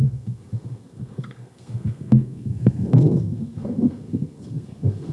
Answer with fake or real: fake